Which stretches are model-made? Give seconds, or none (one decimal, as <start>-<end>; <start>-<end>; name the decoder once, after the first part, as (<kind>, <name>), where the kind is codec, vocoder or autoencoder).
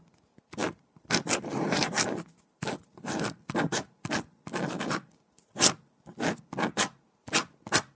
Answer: 0.6-4.8 (vocoder, BigVGAN v2)